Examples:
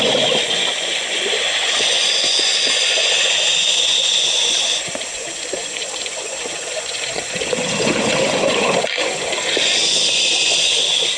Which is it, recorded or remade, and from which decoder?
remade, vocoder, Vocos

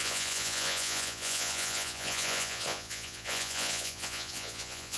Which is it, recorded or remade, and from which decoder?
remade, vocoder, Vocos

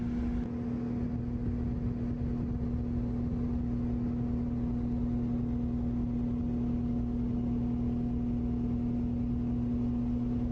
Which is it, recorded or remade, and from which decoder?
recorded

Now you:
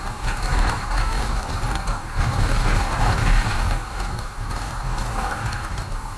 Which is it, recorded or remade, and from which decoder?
remade, codec, DAC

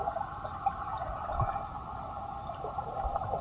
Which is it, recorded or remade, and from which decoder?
recorded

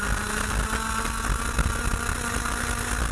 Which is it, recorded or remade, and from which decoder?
recorded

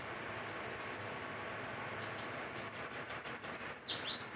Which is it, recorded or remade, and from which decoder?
recorded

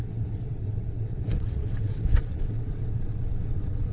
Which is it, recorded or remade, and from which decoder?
remade, vocoder, WaveNeXt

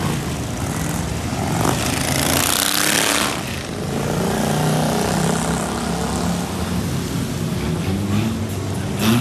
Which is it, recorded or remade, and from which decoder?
recorded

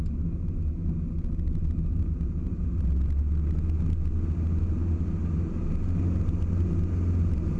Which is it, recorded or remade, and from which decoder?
recorded